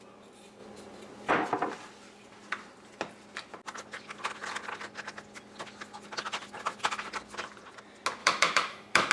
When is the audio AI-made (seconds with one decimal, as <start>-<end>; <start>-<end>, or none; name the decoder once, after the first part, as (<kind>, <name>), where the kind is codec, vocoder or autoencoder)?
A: 8.2-9.1 (autoencoder, DAC-VAE)